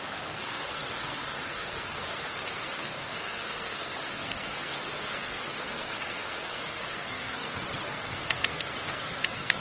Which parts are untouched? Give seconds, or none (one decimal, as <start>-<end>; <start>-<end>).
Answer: none

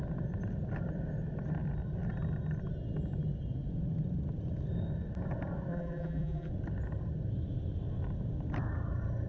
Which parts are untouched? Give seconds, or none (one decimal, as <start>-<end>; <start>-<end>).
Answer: 0.0-5.7; 6.5-9.3

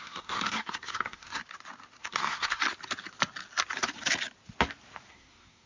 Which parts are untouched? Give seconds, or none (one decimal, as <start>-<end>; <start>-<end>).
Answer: 1.4-2.0; 2.6-5.1

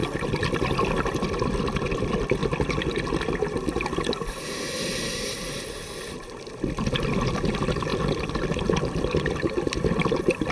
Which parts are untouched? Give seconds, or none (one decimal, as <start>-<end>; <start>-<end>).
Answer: 0.0-10.5